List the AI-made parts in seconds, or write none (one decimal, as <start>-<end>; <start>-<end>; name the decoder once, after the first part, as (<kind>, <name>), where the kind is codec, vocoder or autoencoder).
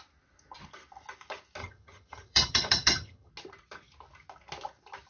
1.6-3.3 (vocoder, HiFi-GAN)